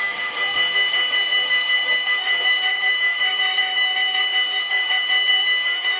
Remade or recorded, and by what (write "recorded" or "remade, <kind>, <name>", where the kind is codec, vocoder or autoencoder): remade, autoencoder, DAC-VAE